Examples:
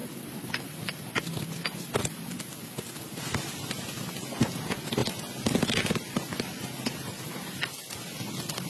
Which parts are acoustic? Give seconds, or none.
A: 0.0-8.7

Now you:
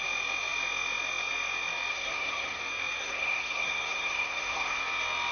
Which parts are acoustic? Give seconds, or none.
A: 0.0-1.9; 2.6-3.0; 4.8-5.3

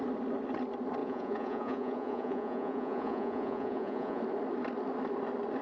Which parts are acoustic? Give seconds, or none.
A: 0.0-1.0; 4.2-5.6

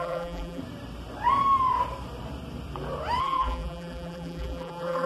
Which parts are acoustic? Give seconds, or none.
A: 0.6-3.2

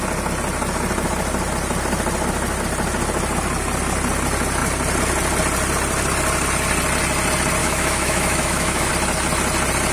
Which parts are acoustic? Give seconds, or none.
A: 0.0-7.6; 8.9-9.9

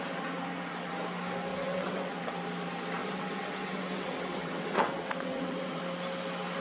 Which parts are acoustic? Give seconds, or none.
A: 0.0-1.5; 2.2-3.0; 5.8-6.6

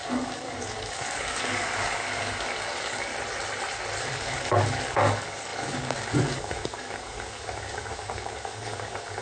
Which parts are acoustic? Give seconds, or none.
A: 3.1-4.0

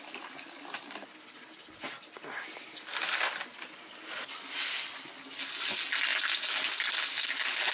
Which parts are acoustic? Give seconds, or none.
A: 0.0-7.7